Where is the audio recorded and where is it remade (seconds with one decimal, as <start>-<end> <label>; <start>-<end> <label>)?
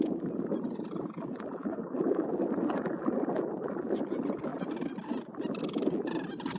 0.0-1.6 recorded; 1.6-2.3 remade; 2.3-6.6 recorded